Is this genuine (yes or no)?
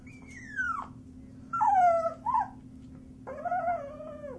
yes